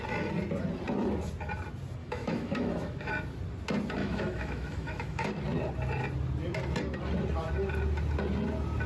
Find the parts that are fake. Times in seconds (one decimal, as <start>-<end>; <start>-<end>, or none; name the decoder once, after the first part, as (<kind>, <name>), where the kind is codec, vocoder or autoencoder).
2.0-3.1 (autoencoder, DAC-VAE); 4.0-5.3